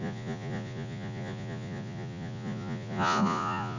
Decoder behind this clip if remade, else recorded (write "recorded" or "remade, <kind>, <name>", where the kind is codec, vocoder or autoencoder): remade, vocoder, Vocos